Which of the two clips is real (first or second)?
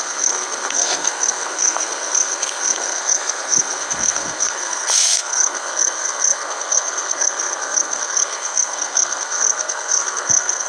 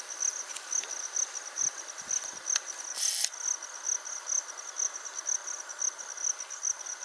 second